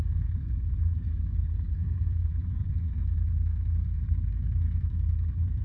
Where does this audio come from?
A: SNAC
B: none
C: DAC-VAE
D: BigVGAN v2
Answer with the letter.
A